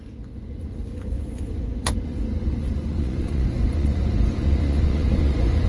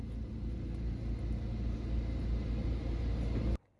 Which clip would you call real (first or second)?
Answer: second